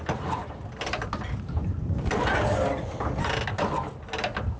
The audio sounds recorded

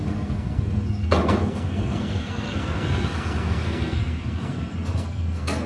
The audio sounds remade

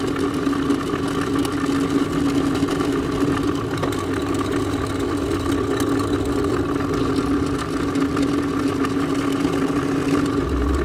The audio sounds recorded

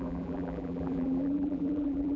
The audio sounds remade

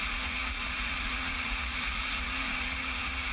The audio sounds remade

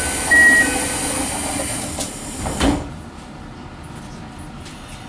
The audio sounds recorded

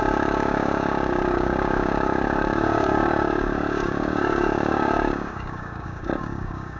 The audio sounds remade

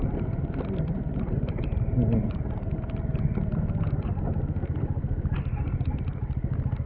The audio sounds recorded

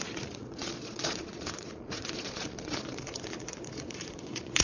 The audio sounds remade